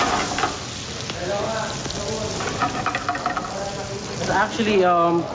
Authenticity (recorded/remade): recorded